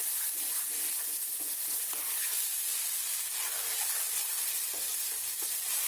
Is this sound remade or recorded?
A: recorded